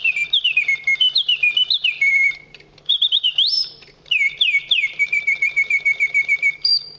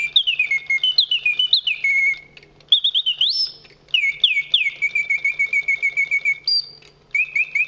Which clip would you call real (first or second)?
second